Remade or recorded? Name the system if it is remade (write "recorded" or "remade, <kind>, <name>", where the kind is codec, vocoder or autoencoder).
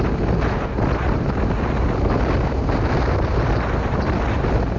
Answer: recorded